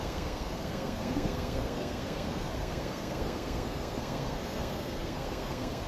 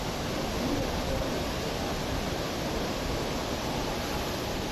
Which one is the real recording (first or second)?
second